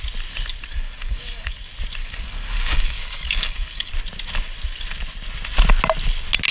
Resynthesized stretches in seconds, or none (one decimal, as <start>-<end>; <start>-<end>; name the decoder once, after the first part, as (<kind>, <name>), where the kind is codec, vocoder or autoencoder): 0.7-1.6 (codec, DAC); 2.0-3.9